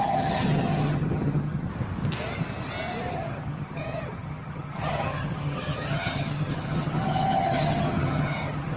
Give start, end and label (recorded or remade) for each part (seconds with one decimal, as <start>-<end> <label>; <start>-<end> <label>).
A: 0.0-1.7 remade; 1.7-3.1 recorded; 3.1-8.8 remade

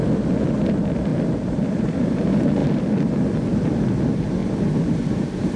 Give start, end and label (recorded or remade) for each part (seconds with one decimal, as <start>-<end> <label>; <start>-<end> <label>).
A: 0.0-4.4 recorded; 4.4-5.6 remade

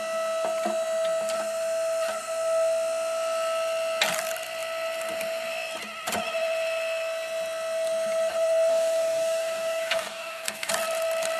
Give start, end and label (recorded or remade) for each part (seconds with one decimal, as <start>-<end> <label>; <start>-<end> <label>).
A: 0.0-8.7 recorded; 8.7-10.7 remade; 10.7-11.4 recorded

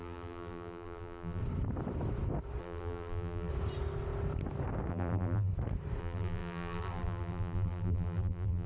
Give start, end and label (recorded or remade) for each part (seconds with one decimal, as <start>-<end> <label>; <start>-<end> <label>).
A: 0.0-1.4 remade; 1.4-2.6 recorded; 2.6-3.5 remade; 3.5-4.9 recorded; 4.9-5.5 remade; 5.5-6.0 recorded; 6.0-8.7 remade

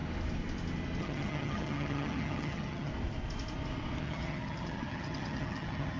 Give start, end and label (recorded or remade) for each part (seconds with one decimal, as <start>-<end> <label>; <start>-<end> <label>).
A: 0.0-1.0 recorded; 1.0-2.9 remade; 2.9-4.0 recorded; 4.0-6.0 remade